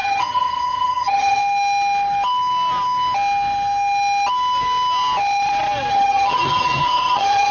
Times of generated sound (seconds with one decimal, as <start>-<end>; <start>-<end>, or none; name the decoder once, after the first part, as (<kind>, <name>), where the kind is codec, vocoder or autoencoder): 0.0-1.4 (vocoder, HiFi-GAN); 5.9-7.5